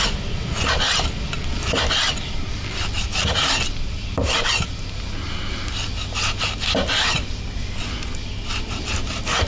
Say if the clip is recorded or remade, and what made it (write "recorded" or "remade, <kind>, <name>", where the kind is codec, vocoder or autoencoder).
recorded